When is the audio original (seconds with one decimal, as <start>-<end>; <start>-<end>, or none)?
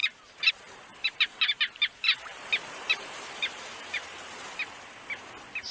0.5-0.9; 4.3-5.7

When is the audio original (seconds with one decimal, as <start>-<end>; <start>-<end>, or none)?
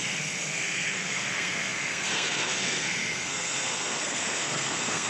none